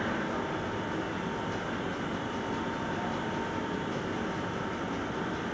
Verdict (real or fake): real